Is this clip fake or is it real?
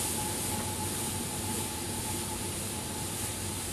real